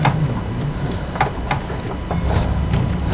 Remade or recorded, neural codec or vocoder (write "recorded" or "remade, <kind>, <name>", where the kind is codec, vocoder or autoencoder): recorded